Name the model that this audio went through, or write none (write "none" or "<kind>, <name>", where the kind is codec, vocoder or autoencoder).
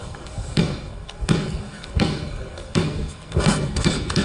codec, SNAC